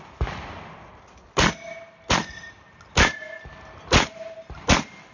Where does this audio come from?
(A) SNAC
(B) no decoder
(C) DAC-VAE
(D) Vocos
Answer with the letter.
B